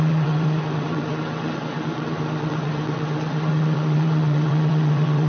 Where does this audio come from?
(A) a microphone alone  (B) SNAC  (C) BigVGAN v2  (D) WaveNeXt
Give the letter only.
D